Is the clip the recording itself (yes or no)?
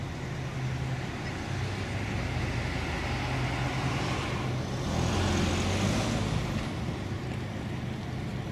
yes